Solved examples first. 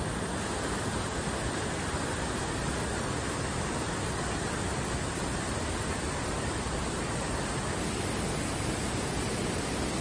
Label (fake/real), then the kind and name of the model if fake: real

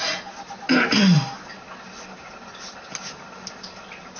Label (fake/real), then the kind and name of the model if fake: real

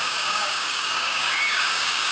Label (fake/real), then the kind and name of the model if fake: fake, codec, DAC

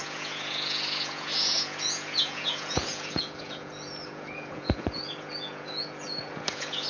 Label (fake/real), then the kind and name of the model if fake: fake, vocoder, Vocos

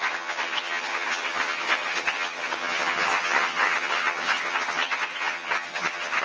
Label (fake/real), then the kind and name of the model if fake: fake, vocoder, HiFi-GAN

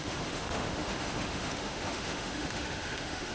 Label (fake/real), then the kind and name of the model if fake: fake, autoencoder, DAC-VAE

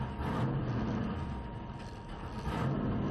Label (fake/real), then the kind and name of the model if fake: real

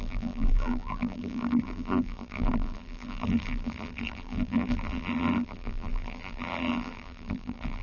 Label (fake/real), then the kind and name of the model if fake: fake, vocoder, BigVGAN v2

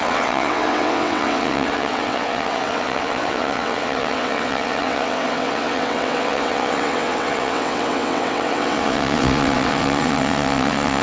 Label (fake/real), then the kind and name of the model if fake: fake, vocoder, WaveNeXt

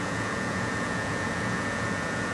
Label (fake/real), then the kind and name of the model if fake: fake, vocoder, Vocos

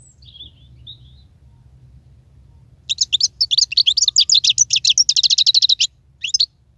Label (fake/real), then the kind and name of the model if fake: real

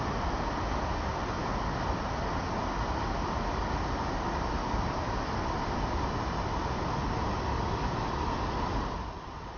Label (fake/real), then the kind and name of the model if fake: real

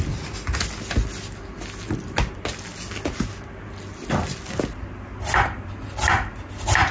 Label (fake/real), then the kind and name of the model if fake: real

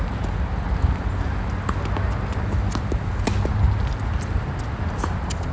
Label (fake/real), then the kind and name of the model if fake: real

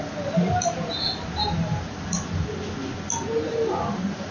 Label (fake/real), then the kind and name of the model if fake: real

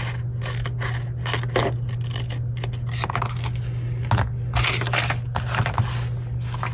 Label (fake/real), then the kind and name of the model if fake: real